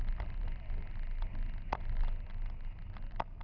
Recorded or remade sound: recorded